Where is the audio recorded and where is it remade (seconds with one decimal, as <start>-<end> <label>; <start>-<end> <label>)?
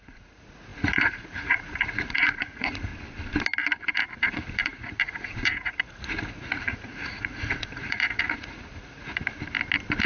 0.0-2.9 remade; 2.9-4.2 recorded; 4.2-9.2 remade; 9.2-10.1 recorded